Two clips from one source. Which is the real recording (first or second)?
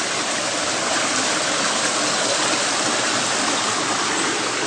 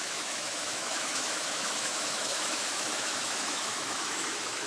first